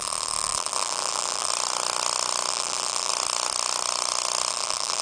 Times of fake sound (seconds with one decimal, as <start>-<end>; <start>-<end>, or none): 0.0-1.5; 2.5-3.1; 4.5-5.0